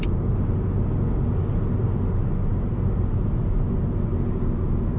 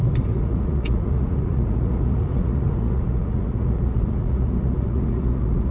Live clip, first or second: first